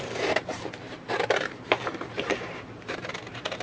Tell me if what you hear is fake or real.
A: fake